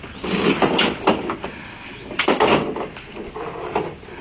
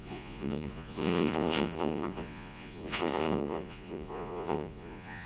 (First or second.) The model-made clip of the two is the second